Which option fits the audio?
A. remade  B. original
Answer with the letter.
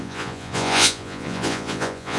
A